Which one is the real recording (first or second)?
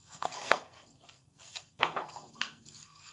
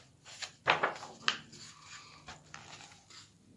second